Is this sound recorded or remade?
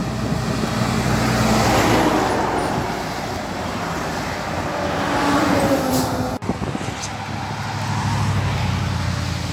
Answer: recorded